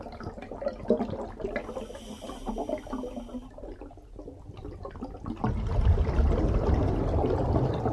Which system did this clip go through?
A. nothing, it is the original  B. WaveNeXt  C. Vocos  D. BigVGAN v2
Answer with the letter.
A